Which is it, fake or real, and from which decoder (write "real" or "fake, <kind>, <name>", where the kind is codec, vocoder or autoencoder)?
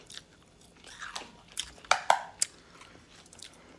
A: real